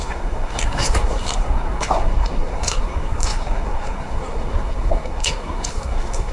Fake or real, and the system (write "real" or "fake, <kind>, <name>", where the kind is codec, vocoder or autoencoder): fake, codec, SNAC